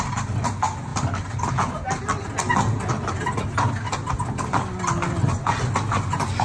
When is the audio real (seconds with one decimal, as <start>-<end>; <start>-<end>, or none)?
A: 0.0-6.4